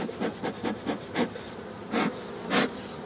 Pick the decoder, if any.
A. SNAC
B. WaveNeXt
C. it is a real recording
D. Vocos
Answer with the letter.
C